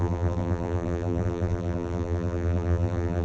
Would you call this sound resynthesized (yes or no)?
yes